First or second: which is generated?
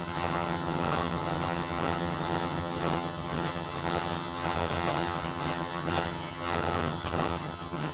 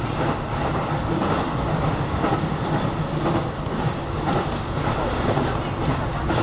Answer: first